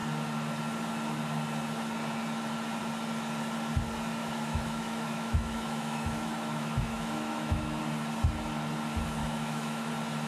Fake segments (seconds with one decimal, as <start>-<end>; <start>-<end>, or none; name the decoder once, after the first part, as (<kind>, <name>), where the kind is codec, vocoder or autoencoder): 4.2-7.8 (autoencoder, DAC-VAE); 9.2-9.9